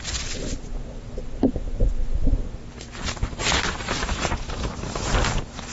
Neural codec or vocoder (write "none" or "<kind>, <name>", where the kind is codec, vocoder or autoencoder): none